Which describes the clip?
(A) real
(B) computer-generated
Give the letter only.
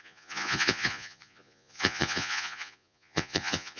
B